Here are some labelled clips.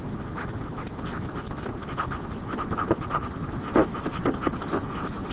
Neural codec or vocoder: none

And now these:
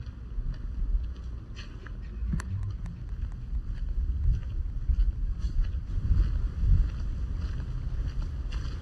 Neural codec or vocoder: none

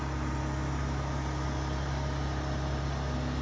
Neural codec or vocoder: none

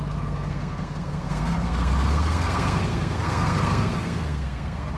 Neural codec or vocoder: codec, SNAC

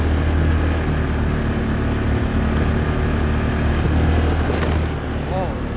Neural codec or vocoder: none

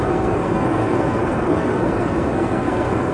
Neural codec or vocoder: codec, SNAC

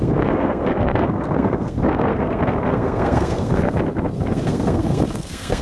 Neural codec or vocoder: codec, SNAC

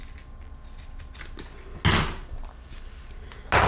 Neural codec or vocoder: none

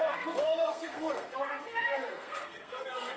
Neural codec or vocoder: codec, SNAC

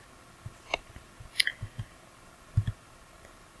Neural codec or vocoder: none